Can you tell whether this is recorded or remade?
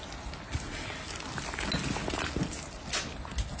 recorded